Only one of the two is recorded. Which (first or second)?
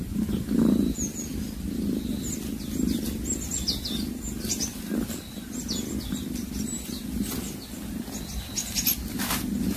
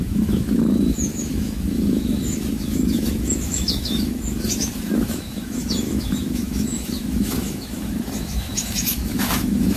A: first